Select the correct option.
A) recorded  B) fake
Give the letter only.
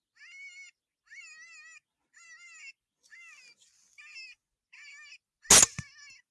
A